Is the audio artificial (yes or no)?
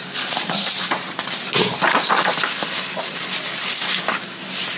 no